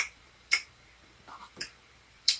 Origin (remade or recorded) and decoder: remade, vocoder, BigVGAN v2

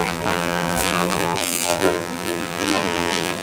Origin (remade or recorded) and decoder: remade, vocoder, BigVGAN v2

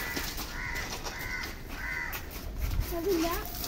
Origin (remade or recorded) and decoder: recorded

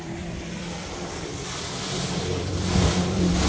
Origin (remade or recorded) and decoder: remade, vocoder, BigVGAN v2